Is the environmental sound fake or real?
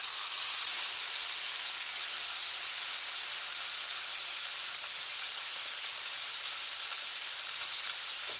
real